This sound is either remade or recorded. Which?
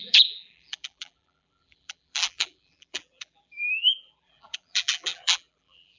remade